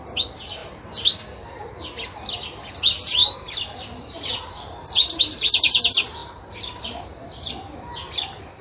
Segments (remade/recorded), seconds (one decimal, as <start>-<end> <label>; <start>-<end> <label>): 0.0-3.2 recorded; 3.2-5.2 remade; 5.2-6.2 recorded; 6.2-7.5 remade; 7.5-8.6 recorded